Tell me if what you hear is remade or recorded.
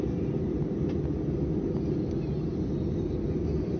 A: recorded